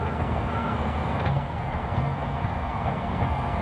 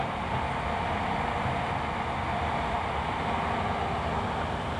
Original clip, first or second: second